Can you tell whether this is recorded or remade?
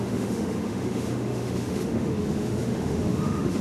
remade